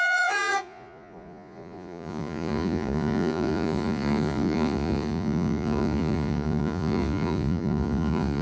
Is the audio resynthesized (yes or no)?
yes